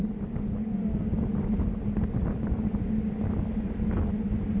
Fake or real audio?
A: real